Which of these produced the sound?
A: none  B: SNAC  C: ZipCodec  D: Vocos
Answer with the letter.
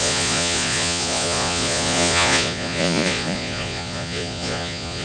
D